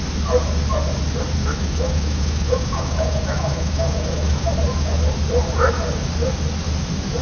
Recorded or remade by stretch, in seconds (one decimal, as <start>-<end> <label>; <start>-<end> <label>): 0.0-1.4 recorded; 1.4-4.5 remade; 4.5-7.2 recorded